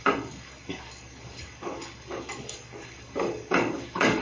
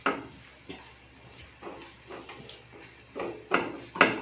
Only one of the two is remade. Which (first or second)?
first